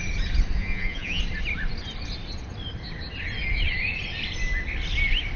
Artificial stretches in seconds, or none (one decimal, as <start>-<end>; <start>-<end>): 0.6-1.2